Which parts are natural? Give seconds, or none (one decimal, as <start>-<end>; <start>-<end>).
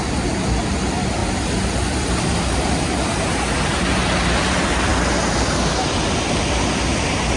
0.0-7.4